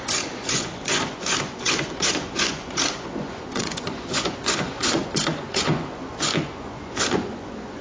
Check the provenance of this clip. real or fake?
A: fake